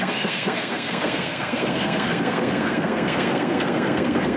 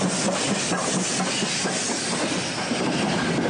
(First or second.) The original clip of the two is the second